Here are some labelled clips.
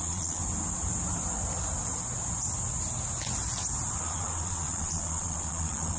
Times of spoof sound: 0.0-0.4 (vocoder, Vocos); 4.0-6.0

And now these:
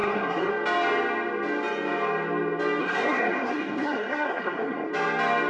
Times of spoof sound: 0.0-0.5 (codec, SNAC); 2.8-4.9

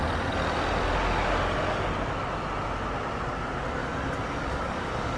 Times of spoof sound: 3.8-5.2 (codec, DAC)